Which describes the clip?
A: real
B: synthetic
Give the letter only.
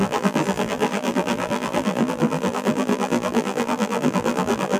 B